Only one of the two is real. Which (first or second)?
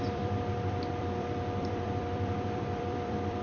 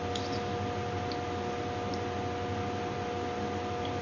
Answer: second